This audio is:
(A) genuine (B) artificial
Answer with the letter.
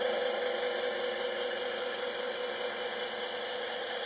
A